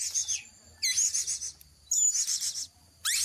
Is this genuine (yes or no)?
yes